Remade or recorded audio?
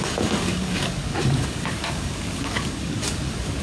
remade